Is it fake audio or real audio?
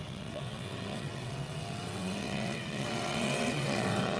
fake